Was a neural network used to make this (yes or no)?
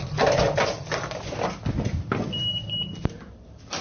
no